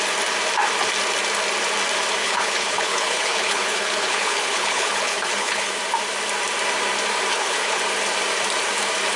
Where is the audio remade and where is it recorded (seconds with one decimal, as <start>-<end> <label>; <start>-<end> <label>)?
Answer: 0.0-2.2 recorded; 2.2-5.7 remade; 5.7-7.3 recorded; 7.3-7.8 remade; 7.8-9.2 recorded